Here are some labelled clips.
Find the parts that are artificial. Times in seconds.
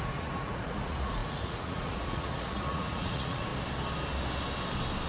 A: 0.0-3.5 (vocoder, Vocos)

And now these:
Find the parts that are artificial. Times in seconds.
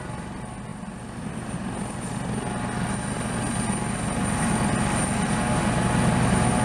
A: none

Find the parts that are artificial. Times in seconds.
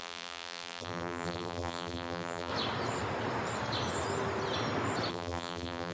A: 0.0-2.5 (vocoder, BigVGAN v2); 5.1-5.9